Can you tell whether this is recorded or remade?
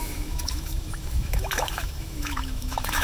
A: remade